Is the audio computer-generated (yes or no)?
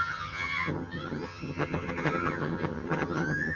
yes